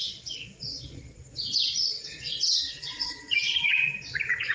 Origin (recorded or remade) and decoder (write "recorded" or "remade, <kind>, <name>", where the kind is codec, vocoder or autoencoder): remade, vocoder, Vocos